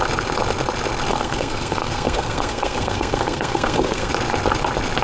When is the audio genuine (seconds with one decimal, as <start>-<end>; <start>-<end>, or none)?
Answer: 0.0-1.1; 4.1-5.0

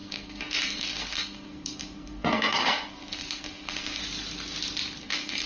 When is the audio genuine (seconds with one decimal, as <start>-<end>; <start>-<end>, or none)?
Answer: 4.0-5.0

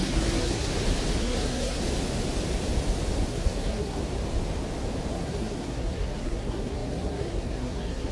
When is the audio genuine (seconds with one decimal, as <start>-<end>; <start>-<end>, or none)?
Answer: 0.7-1.2; 1.8-3.3; 4.0-5.1

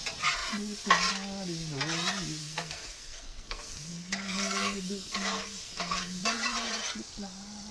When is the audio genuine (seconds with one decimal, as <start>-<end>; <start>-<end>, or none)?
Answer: 0.0-2.4; 6.2-7.7